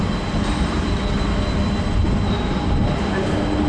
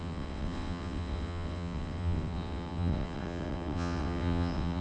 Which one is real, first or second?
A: first